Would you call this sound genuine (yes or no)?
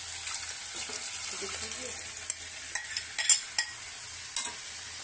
yes